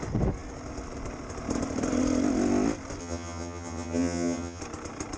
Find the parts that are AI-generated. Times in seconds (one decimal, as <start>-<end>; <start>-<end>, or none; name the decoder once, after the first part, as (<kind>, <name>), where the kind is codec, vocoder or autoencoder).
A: 3.0-4.6 (vocoder, HiFi-GAN)